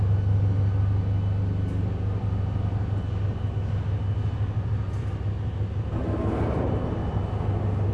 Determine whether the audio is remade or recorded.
recorded